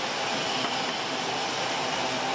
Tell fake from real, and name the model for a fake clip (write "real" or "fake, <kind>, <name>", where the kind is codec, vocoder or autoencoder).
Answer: real